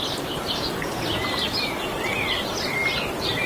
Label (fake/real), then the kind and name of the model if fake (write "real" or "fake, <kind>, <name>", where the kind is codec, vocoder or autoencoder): real